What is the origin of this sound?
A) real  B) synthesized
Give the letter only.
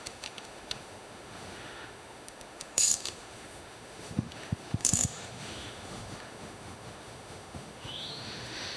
B